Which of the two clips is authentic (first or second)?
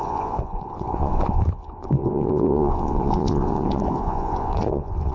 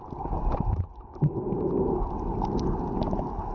second